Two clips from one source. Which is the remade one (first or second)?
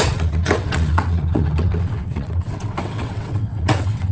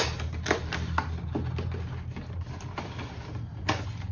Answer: first